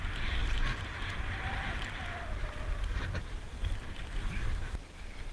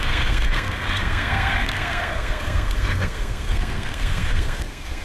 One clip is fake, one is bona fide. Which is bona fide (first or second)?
first